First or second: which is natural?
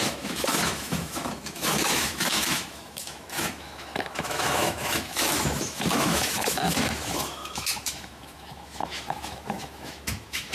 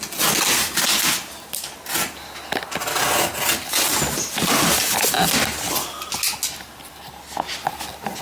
second